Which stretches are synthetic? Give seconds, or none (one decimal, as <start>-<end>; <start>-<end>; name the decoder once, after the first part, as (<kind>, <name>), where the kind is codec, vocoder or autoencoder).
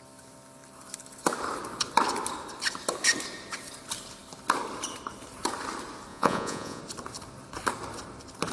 6.1-6.8 (vocoder, Vocos)